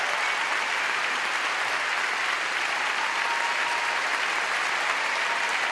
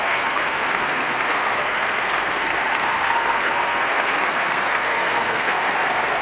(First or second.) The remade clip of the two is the second